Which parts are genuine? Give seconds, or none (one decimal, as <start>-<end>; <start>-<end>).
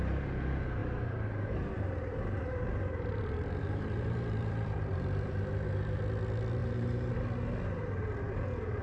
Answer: 0.0-0.8; 6.0-6.6; 7.1-8.8